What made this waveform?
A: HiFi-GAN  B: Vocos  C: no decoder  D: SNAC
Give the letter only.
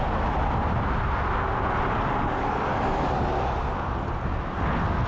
C